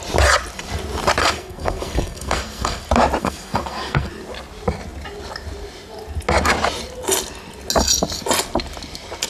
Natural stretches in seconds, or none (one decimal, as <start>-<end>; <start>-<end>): 0.0-1.2; 2.8-3.2; 4.1-9.3

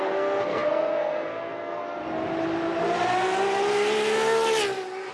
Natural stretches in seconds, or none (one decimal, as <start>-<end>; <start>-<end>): 1.8-5.1

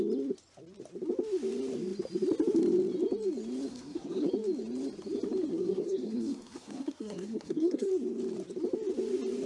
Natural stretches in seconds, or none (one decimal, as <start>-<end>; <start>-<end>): 0.0-3.7; 4.3-5.5; 7.9-9.5

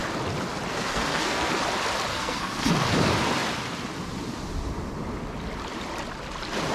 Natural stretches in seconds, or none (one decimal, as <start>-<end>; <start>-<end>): 0.0-0.7; 1.5-2.1; 2.7-6.7

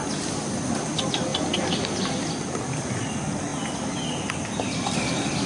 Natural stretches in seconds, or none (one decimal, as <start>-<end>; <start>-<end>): 0.0-5.5